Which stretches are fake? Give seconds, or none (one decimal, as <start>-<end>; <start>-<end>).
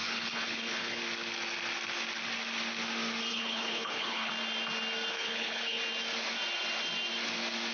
0.0-1.0; 3.3-4.3; 5.1-5.8